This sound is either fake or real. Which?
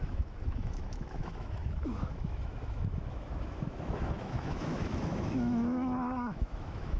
fake